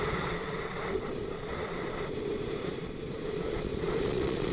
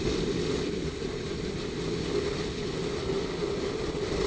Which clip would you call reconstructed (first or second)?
first